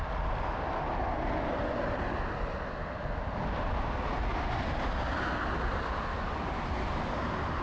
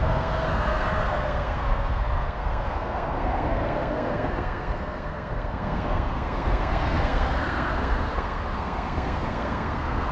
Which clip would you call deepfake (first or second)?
second